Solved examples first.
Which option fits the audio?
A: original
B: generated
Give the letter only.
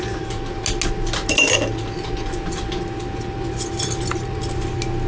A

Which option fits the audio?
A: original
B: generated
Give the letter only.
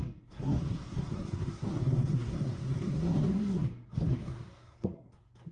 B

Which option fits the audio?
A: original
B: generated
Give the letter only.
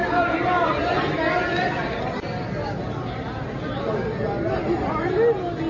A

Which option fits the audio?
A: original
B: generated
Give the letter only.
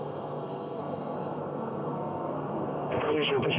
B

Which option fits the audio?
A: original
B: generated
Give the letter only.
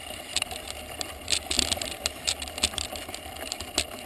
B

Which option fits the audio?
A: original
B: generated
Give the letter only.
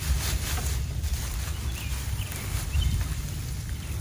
A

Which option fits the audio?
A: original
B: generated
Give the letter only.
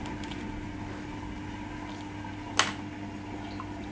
A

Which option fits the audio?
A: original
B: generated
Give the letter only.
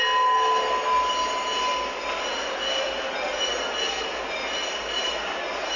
A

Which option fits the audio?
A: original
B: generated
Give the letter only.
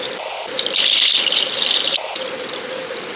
A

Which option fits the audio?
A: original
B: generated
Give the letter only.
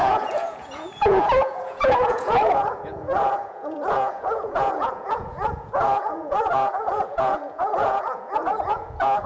B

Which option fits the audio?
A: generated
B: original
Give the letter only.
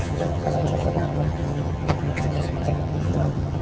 A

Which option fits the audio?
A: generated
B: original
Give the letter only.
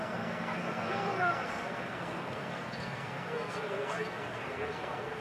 A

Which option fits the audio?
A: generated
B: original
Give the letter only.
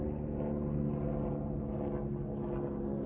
B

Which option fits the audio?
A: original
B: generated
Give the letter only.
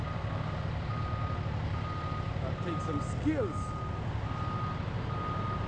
A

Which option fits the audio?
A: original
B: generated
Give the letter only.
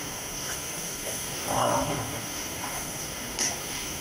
B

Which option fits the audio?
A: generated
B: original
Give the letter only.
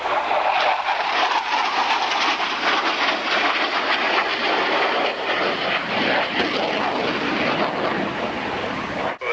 B